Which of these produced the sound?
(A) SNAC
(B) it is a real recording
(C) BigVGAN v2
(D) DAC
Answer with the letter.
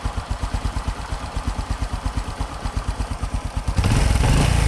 B